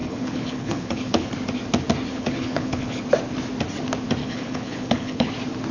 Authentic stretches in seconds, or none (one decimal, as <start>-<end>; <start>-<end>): 1.3-2.1; 3.0-4.2; 5.3-5.7